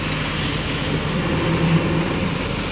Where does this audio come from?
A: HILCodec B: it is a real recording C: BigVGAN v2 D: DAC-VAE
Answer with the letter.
B